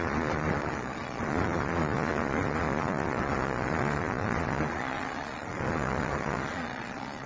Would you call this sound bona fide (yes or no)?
no